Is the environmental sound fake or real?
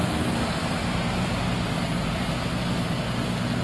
real